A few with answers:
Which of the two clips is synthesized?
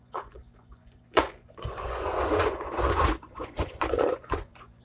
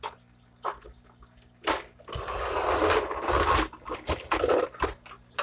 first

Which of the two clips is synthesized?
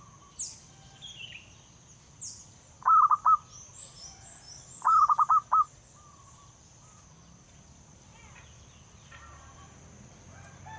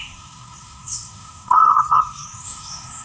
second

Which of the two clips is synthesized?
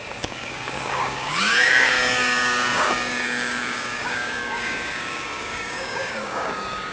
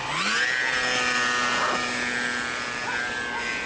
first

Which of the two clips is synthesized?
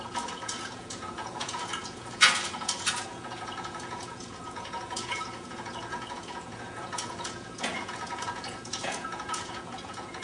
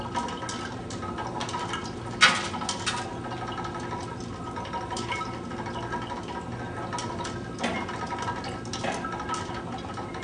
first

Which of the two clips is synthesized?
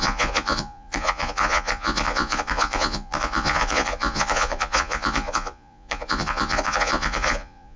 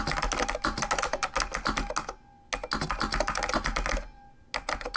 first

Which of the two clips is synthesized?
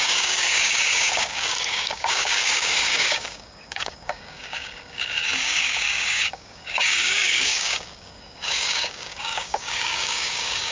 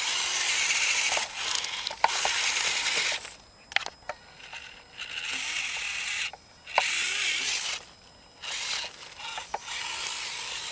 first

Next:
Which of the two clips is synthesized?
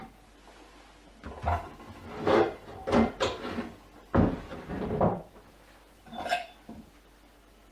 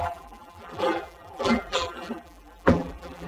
second